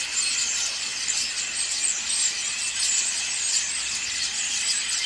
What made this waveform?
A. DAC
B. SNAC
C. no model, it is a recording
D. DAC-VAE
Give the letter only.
C